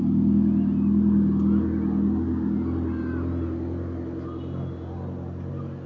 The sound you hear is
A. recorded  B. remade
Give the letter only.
A